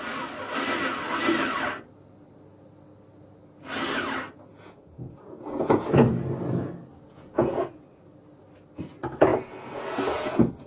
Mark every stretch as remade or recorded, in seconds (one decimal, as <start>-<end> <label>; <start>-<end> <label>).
0.0-4.5 recorded; 4.5-6.1 remade; 6.1-6.9 recorded; 6.9-7.8 remade; 7.8-9.3 recorded; 9.3-10.7 remade